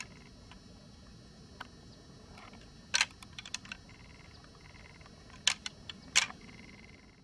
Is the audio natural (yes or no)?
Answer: yes